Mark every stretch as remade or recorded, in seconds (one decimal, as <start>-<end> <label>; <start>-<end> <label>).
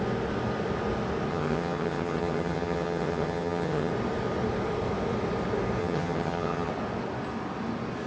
0.0-1.3 recorded; 1.3-3.9 remade; 3.9-5.8 recorded; 5.8-6.7 remade; 6.7-8.1 recorded